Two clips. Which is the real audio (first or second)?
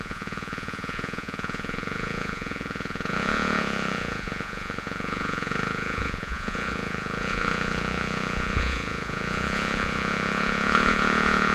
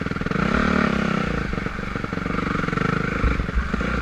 second